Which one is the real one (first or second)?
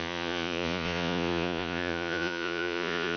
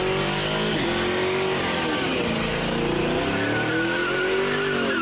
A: second